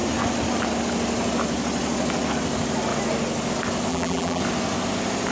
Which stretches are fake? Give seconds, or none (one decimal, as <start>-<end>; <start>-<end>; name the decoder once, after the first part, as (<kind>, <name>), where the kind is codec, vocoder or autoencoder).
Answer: 3.9-4.4 (vocoder, BigVGAN v2)